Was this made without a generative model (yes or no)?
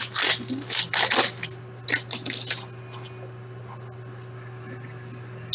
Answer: yes